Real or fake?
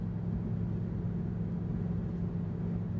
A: real